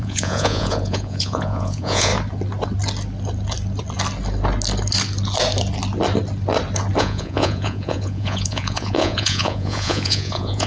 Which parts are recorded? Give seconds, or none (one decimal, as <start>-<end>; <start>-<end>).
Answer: 2.1-7.0